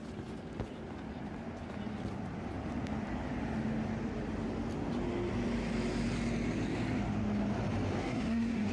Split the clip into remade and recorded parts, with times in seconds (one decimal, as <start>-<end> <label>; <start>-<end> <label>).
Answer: 0.0-8.0 recorded; 8.0-8.7 remade